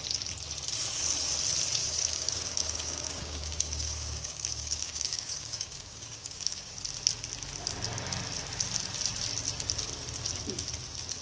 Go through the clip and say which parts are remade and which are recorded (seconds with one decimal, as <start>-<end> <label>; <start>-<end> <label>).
0.0-1.8 recorded; 1.8-6.8 remade; 6.8-11.2 recorded